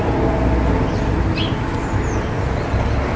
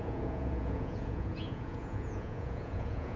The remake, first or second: second